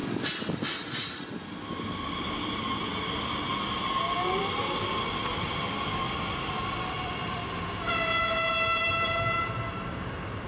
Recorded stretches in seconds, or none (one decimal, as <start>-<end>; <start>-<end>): 2.8-10.5